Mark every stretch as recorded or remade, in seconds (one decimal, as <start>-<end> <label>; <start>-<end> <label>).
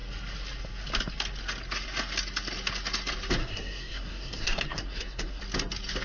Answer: 0.0-3.4 recorded; 3.4-5.4 remade; 5.4-6.0 recorded